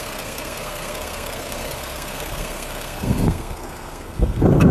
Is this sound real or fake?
fake